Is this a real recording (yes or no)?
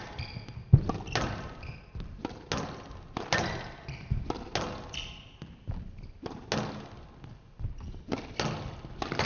yes